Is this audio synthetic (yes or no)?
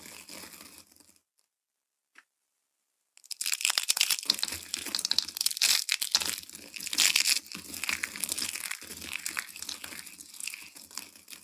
no